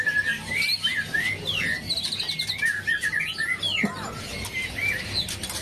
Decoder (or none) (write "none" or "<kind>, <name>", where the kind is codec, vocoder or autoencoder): none